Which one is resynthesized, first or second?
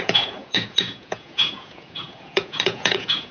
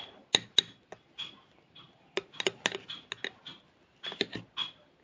first